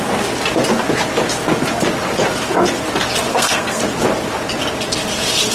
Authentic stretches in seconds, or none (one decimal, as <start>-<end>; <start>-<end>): 0.0-3.3; 3.8-5.5